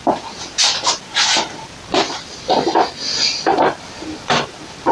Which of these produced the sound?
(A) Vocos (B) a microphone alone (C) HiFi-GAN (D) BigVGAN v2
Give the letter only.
D